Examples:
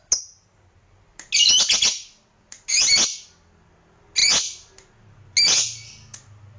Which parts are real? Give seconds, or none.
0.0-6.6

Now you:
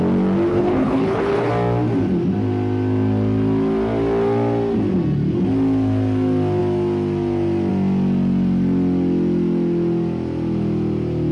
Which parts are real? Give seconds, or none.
0.0-0.5; 1.5-11.3

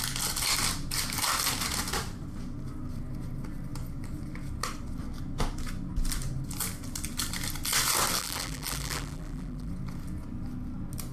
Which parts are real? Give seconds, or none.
0.0-8.2; 9.7-11.1

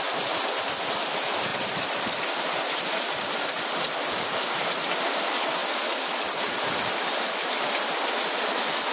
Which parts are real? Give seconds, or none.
0.0-8.9

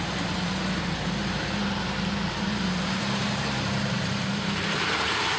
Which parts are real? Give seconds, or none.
1.6-2.3

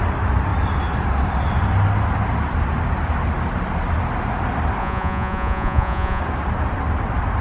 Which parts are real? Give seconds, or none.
0.0-4.8; 6.2-7.4

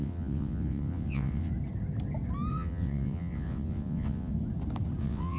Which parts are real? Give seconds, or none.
1.5-2.5; 4.3-5.0

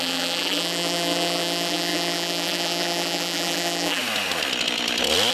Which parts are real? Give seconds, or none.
4.0-5.3